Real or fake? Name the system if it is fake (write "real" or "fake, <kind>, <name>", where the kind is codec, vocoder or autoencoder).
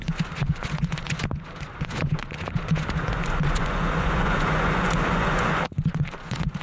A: fake, vocoder, Vocos